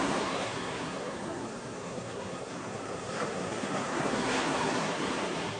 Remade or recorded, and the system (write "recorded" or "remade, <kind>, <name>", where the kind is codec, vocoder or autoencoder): remade, codec, SNAC